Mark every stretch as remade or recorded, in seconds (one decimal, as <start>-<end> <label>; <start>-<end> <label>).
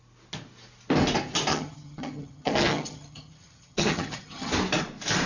0.0-1.5 recorded; 1.5-4.5 remade; 4.5-5.3 recorded